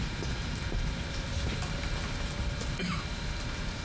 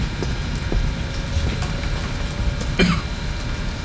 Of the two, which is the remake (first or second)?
first